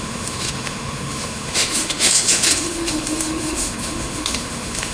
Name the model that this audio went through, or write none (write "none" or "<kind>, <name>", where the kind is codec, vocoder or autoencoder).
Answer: autoencoder, DAC-VAE